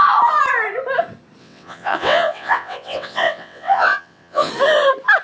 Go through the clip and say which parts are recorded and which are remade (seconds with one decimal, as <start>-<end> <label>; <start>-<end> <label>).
0.0-1.4 recorded; 1.4-4.5 remade; 4.5-5.2 recorded